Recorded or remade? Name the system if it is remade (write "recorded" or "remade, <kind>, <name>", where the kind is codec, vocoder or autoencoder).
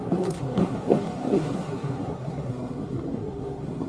remade, codec, SNAC